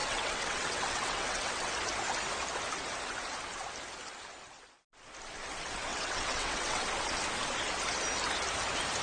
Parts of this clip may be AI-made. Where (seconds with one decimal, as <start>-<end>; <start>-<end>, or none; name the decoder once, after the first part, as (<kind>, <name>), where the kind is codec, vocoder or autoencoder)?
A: 0.0-1.7 (vocoder, WaveNeXt); 5.9-6.8